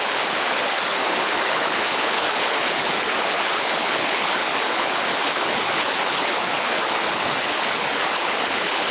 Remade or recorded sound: remade